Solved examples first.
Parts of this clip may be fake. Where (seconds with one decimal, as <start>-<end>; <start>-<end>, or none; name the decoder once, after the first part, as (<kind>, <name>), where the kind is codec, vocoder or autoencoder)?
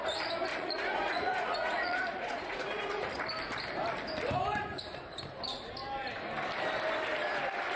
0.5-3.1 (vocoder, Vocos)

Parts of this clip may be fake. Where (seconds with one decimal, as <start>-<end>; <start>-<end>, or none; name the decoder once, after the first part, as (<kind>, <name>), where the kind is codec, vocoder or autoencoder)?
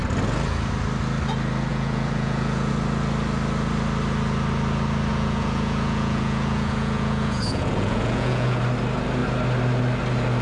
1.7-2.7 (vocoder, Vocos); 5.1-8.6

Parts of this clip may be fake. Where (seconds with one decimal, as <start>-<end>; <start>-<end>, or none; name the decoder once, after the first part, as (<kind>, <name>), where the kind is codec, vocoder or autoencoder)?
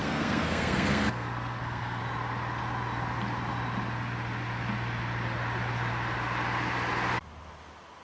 0.0-2.0 (codec, SNAC)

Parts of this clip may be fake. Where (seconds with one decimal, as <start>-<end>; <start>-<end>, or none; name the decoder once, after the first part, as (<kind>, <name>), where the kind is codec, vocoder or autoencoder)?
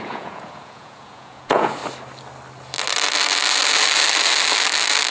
0.0-1.8 (vocoder, Vocos)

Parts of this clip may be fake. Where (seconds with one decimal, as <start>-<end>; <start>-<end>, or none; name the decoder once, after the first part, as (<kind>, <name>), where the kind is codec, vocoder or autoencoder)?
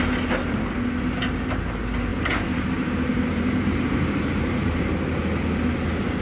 2.1-4.8 (vocoder, BigVGAN v2)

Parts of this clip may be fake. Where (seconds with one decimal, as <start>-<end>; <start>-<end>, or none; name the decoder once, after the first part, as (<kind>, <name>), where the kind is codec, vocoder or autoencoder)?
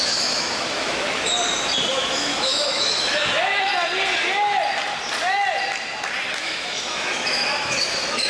0.0-1.3 (autoencoder, DAC-VAE); 1.9-3.7; 6.3-8.3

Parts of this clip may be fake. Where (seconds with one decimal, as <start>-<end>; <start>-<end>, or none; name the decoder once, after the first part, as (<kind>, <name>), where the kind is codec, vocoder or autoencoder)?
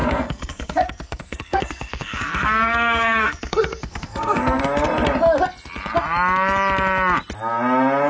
0.0-4.6 (codec, SNAC)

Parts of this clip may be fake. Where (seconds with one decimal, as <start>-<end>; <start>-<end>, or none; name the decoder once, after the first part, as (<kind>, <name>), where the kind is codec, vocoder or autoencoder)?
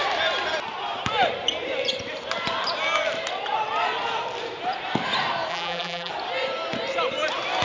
5.5-6.1 (vocoder, BigVGAN v2)